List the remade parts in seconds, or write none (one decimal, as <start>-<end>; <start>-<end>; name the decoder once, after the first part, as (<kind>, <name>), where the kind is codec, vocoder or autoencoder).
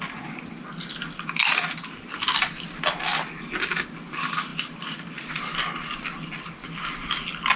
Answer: none